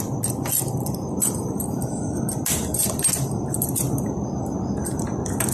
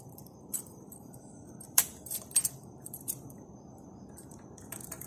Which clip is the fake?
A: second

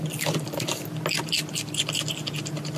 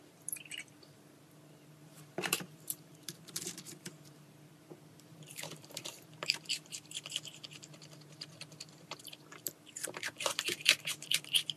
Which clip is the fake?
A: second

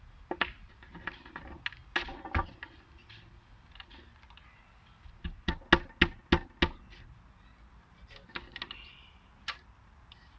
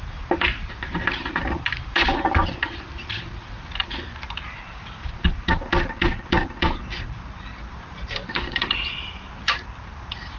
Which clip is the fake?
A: second